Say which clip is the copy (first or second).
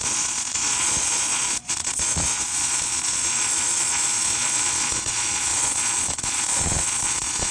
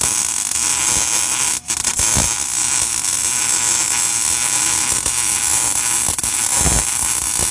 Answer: first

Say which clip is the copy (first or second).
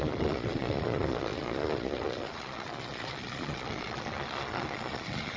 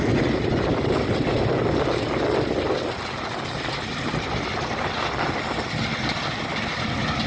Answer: first